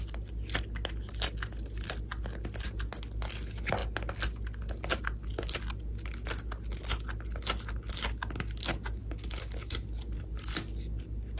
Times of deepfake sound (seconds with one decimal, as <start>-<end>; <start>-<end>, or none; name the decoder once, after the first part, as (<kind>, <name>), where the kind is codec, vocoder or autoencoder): none